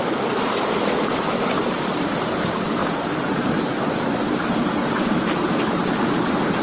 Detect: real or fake real